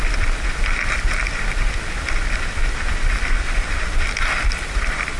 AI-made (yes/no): no